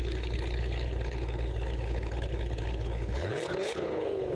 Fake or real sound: fake